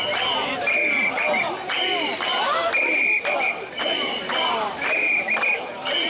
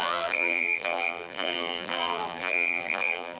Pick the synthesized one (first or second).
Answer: second